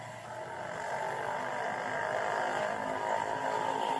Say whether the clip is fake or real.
real